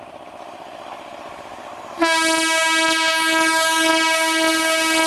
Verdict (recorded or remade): recorded